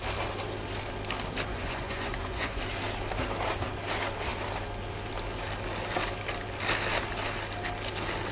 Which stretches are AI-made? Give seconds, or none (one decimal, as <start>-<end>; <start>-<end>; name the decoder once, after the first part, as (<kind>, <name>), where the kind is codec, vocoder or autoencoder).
1.5-2.6 (vocoder, Vocos)